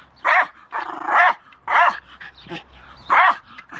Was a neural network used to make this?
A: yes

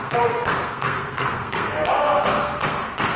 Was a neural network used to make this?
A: yes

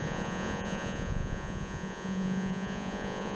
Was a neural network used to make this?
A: yes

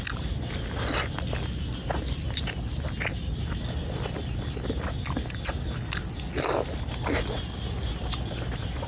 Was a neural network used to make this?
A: no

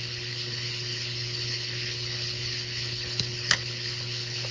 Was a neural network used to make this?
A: yes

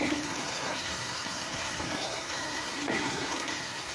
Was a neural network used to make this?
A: yes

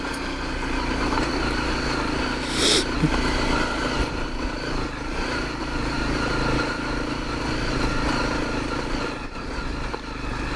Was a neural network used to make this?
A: no